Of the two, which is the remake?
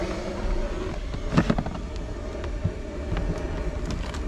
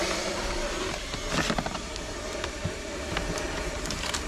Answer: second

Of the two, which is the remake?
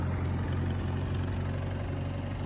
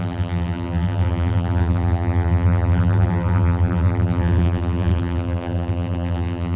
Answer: second